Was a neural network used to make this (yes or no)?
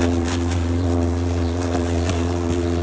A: yes